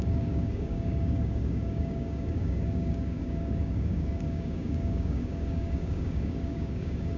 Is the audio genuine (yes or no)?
no